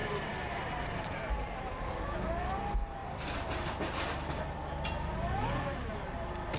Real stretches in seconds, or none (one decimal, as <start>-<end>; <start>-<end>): 1.7-3.0; 4.3-6.6